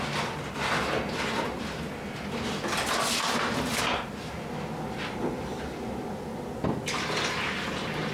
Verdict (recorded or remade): recorded